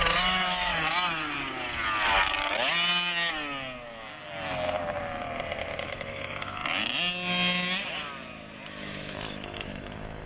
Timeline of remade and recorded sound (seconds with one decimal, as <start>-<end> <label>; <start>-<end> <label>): 0.0-0.7 remade; 0.7-5.8 recorded; 5.8-6.6 remade; 6.6-8.7 recorded; 8.7-10.3 remade